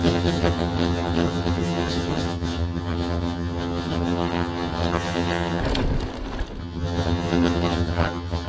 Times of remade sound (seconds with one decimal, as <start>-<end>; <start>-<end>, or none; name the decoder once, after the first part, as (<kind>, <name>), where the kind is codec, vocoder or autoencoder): 0.0-5.6 (vocoder, HiFi-GAN); 6.6-8.5